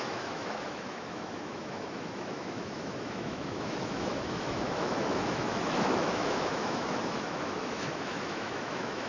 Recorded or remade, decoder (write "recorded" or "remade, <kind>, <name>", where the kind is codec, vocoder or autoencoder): remade, autoencoder, DAC-VAE